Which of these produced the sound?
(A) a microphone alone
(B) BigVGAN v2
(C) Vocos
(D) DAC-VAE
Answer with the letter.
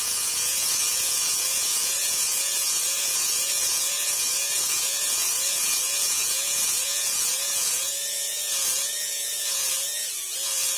C